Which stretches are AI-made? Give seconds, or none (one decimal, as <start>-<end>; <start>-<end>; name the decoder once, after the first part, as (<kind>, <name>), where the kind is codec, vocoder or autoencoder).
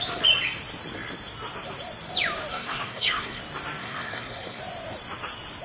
2.5-3.4 (codec, SNAC); 3.8-4.6